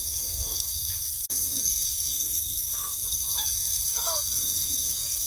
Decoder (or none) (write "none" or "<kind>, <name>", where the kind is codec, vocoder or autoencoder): codec, SNAC